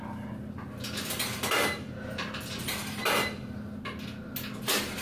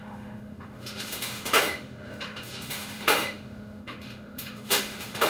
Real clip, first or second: first